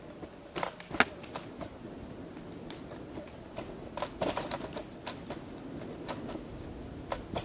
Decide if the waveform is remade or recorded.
recorded